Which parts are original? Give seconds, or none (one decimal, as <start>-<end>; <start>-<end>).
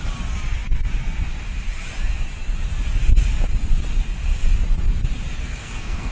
0.0-5.4